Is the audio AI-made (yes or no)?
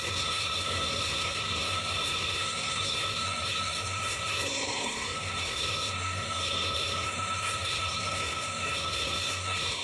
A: yes